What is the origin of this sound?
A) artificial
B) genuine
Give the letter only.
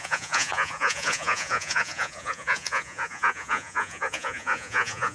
A